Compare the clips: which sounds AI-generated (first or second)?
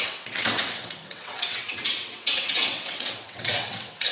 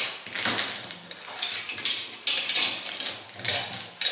first